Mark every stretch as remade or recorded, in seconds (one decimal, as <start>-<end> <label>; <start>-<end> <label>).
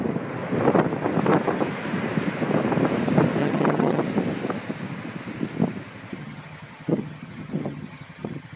0.0-3.4 recorded; 3.4-4.0 remade; 4.0-6.1 recorded; 6.1-8.6 remade